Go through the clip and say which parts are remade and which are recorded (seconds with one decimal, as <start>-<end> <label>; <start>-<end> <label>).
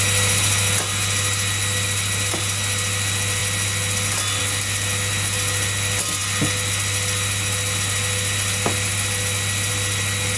0.0-10.4 recorded